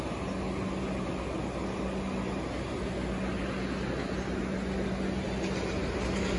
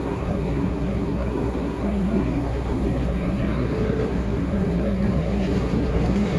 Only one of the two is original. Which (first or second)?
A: first